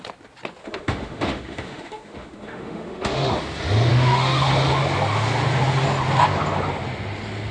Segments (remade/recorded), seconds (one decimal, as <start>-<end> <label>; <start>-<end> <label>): 0.0-0.6 recorded; 0.6-3.3 remade; 3.3-3.9 recorded; 3.9-4.5 remade; 4.5-7.5 recorded